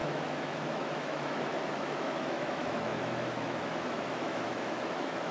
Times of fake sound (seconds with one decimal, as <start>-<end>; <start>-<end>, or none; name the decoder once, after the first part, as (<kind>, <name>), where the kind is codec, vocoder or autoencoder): 0.0-5.3 (autoencoder, DAC-VAE)

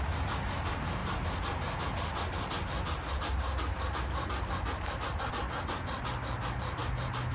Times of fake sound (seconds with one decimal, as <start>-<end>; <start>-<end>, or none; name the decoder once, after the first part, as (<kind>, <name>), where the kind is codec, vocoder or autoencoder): none

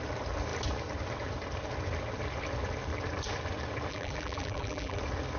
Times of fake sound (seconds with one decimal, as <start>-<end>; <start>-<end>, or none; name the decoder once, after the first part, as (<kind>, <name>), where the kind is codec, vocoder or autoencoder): 3.9-5.0 (vocoder, BigVGAN v2)

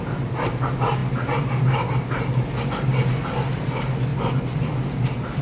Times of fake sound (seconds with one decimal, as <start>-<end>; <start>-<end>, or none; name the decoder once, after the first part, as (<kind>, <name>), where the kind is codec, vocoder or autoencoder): none

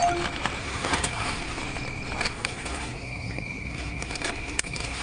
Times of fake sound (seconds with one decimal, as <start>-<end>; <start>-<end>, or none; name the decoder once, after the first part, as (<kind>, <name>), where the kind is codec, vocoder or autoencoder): 0.6-1.6 (codec, SNAC); 2.2-5.0

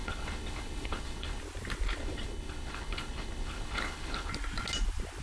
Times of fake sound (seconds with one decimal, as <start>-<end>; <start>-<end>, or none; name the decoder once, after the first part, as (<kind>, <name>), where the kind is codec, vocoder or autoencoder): 0.0-1.4 (codec, HILCodec); 2.0-4.3